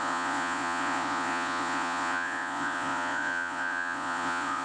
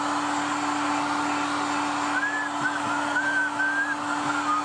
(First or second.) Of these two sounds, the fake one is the first